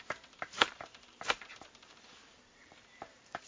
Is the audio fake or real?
fake